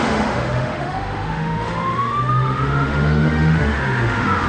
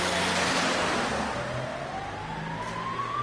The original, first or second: second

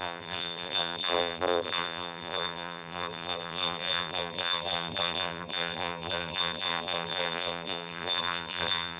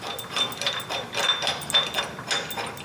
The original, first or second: second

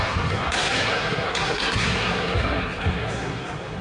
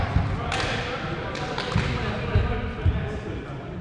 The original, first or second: second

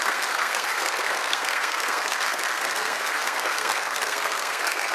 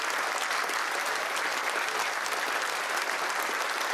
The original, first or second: second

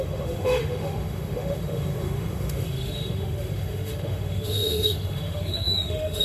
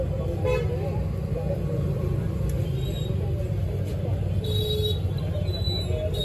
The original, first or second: second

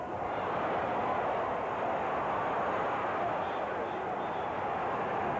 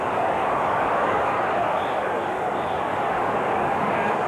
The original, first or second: first